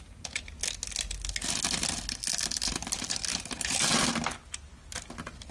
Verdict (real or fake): real